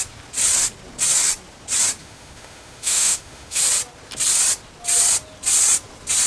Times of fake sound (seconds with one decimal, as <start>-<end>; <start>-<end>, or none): 2.0-3.6